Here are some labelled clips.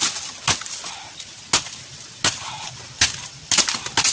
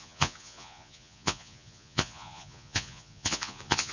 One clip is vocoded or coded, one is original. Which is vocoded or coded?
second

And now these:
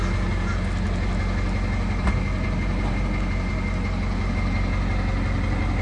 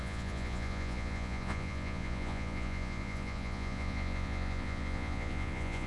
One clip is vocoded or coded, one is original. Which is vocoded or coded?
second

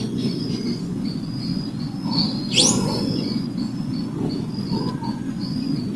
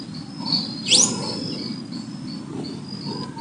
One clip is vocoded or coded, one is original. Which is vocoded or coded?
first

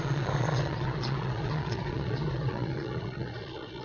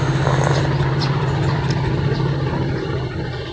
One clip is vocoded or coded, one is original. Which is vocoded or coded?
first